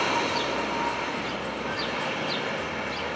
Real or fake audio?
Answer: real